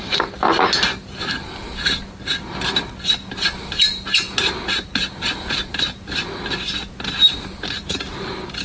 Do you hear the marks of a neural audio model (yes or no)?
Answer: no